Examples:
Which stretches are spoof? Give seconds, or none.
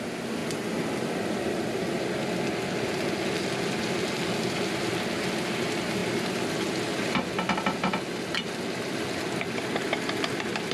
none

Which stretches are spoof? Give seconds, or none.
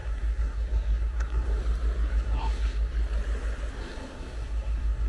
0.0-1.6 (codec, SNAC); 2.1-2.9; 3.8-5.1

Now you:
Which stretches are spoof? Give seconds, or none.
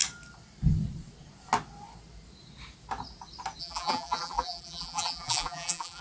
3.6-6.0 (vocoder, BigVGAN v2)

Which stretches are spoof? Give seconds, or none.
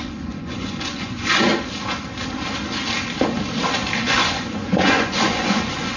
0.0-1.5 (vocoder, Vocos); 4.0-6.0